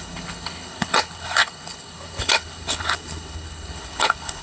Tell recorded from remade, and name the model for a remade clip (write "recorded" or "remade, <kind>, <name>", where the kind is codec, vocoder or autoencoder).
remade, codec, HILCodec